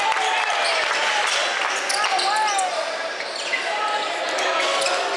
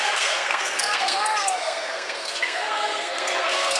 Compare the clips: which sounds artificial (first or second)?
second